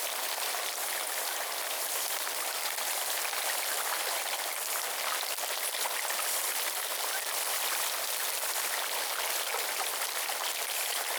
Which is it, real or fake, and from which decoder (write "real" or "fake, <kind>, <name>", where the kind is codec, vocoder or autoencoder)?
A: real